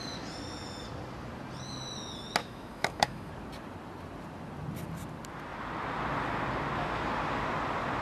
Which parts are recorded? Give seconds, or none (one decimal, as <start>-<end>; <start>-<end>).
0.0-2.4; 3.3-8.0